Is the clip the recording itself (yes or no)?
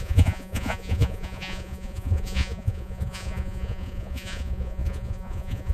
no